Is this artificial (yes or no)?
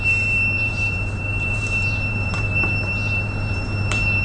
yes